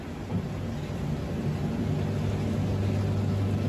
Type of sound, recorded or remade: recorded